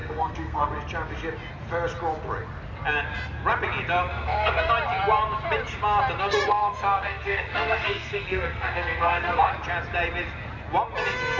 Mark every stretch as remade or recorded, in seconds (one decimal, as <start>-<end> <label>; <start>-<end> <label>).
0.0-0.7 remade; 0.7-4.1 recorded; 4.1-4.7 remade; 4.7-6.2 recorded; 6.2-9.5 remade; 9.5-11.4 recorded